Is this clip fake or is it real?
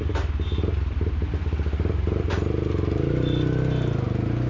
real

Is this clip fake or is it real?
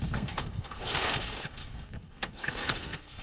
fake